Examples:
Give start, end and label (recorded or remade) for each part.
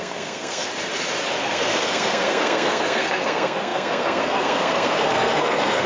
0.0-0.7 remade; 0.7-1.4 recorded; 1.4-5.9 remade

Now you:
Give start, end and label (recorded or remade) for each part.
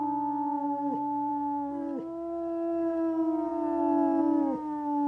0.0-5.1 recorded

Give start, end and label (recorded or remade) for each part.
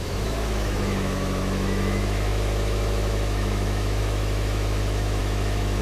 0.0-5.8 remade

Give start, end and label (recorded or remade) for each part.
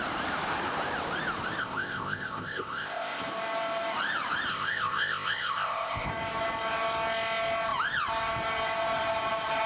0.0-1.6 recorded; 1.6-3.2 remade; 3.2-4.5 recorded; 4.5-6.1 remade; 6.1-9.7 recorded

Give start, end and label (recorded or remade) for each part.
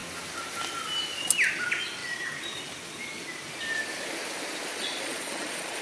0.0-4.7 recorded; 4.7-5.8 remade